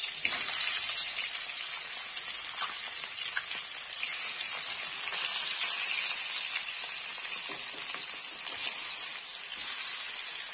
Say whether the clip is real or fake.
real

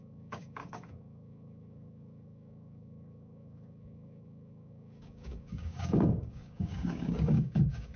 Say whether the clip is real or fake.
fake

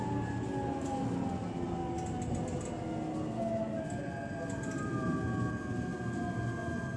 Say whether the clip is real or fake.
real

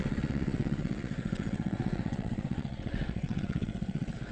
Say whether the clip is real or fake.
fake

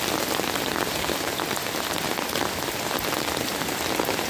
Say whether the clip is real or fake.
real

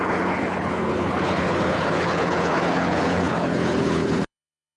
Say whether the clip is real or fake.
fake